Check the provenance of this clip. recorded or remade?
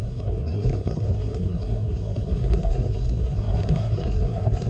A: remade